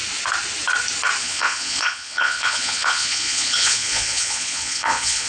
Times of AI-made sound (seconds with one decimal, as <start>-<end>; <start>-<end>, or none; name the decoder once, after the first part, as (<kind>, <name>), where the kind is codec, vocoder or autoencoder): 1.2-5.3 (vocoder, Vocos)